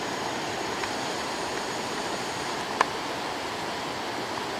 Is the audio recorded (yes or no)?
no